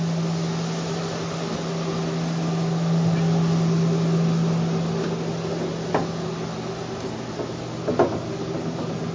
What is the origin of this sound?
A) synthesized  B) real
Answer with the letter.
B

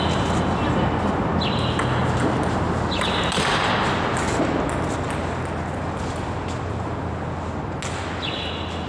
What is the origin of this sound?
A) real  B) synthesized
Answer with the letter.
A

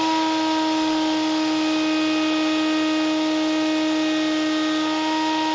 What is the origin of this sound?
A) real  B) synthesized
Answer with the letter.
A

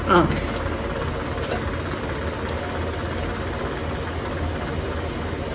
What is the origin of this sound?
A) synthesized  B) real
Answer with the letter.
B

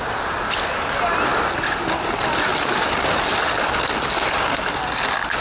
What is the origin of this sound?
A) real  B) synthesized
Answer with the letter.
A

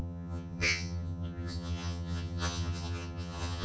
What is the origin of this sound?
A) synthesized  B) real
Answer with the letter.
A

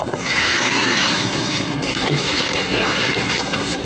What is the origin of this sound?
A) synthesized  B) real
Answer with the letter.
A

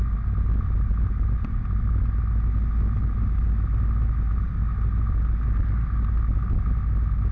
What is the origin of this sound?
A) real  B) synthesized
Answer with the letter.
A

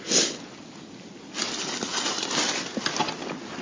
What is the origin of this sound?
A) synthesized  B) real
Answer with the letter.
B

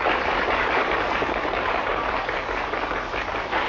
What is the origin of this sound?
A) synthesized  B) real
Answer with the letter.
A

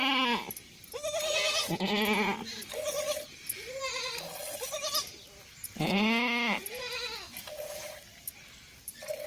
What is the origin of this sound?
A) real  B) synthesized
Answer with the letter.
A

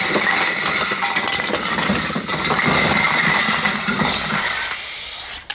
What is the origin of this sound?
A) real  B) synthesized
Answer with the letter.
A